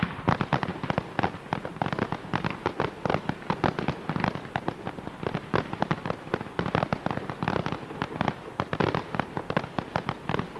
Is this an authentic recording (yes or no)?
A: yes